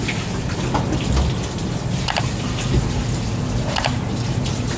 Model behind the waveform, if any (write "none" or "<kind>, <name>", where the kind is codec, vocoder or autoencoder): none